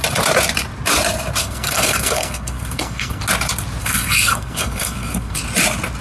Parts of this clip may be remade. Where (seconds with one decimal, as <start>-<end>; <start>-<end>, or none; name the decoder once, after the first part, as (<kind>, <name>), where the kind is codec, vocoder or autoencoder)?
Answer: 1.4-3.2 (codec, SNAC); 3.8-5.4